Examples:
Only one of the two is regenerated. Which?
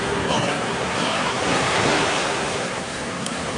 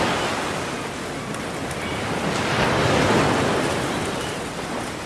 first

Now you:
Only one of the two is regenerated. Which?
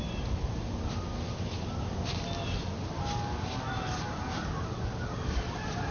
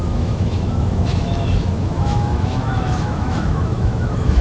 second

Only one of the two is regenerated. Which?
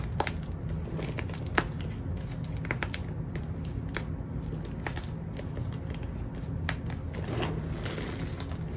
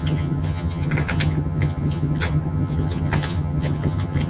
second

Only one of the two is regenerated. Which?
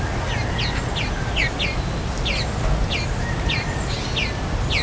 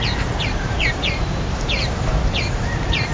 second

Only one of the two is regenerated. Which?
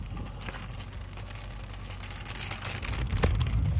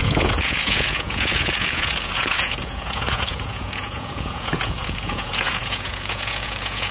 second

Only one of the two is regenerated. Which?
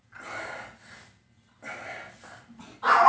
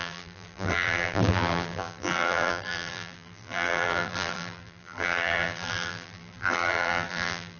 second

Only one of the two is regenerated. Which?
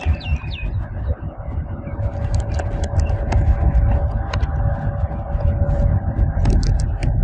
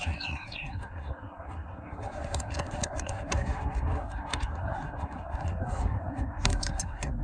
second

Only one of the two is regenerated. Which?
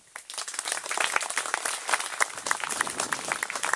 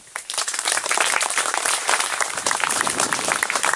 second